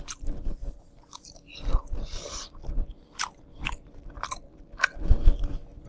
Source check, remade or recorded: remade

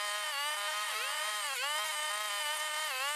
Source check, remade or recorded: recorded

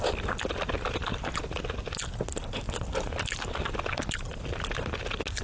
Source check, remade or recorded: recorded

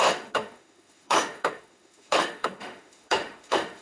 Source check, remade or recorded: remade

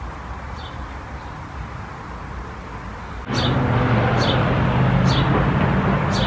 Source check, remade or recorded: recorded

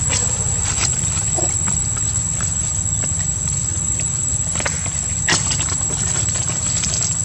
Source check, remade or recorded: recorded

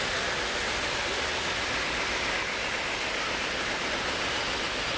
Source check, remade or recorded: recorded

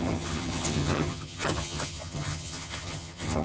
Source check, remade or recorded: remade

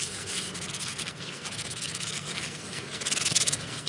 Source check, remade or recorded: remade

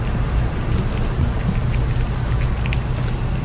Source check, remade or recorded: recorded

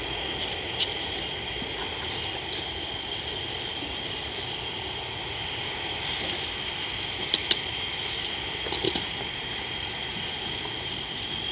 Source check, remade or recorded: recorded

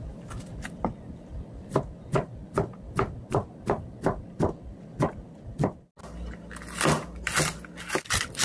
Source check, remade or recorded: recorded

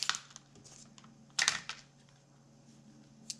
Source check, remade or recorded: recorded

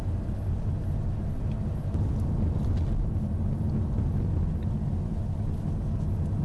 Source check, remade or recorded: recorded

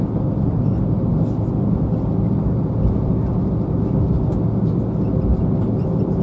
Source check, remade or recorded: recorded